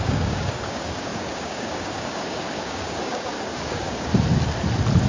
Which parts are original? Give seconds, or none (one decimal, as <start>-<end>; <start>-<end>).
4.1-5.1